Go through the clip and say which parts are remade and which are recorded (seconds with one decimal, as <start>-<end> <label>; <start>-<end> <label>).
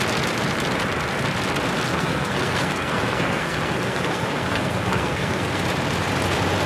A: 0.0-1.9 recorded; 1.9-5.6 remade; 5.6-6.7 recorded